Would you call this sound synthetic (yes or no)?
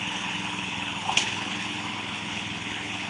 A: yes